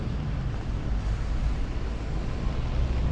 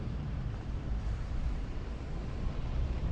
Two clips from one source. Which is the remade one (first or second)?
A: second